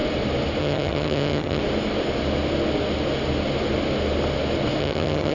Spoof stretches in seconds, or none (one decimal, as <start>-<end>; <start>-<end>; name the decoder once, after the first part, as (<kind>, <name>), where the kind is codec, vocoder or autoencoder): 0.6-1.6 (vocoder, HiFi-GAN); 4.8-5.3